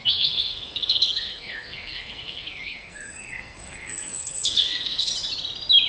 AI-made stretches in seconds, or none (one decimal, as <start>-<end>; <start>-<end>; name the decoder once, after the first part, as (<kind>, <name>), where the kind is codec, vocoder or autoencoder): 0.0-5.1 (codec, SNAC)